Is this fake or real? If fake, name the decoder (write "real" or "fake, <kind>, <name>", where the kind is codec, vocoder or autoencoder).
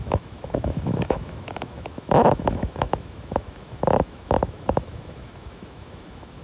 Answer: fake, autoencoder, DAC-VAE